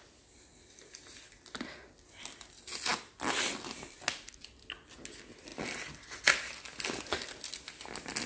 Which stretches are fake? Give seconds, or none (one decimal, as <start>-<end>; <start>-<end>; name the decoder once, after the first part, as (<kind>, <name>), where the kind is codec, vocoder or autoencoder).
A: none